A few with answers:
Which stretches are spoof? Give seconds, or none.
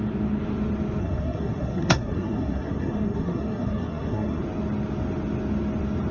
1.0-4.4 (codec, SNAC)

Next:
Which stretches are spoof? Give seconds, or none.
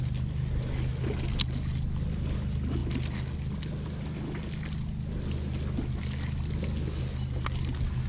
none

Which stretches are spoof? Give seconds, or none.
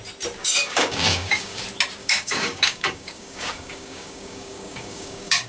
0.4-1.6 (codec, DAC); 2.0-5.5